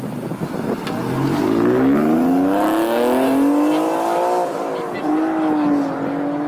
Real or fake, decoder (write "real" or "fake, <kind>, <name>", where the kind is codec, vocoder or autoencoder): real